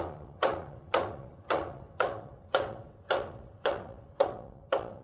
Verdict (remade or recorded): remade